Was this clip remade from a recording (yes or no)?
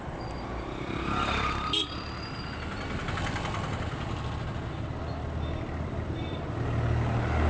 no